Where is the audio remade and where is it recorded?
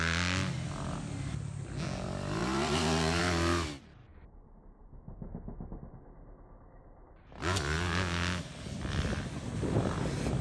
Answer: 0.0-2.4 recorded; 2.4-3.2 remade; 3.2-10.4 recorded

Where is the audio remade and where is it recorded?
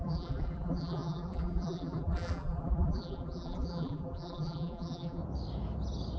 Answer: 0.0-5.2 remade; 5.2-6.2 recorded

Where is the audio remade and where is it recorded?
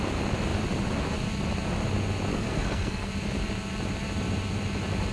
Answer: 0.0-2.3 recorded; 2.3-3.1 remade; 3.1-5.1 recorded